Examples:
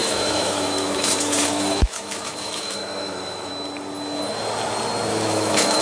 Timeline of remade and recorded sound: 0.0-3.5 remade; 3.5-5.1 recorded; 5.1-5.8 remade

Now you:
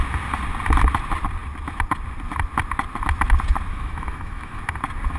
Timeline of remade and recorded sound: 0.0-3.7 recorded; 3.7-4.6 remade; 4.6-5.2 recorded